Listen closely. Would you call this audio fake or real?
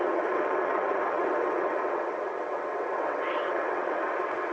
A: fake